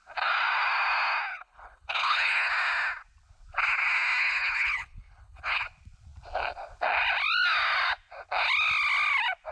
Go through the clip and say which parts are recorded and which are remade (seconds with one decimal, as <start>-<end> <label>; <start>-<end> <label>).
0.0-1.3 recorded; 1.3-2.5 remade; 2.5-4.2 recorded; 4.2-5.6 remade; 5.6-9.5 recorded